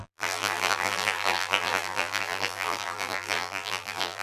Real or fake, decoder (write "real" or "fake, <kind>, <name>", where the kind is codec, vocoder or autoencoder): fake, vocoder, BigVGAN v2